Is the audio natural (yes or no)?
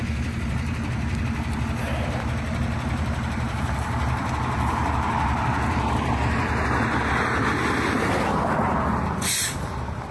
yes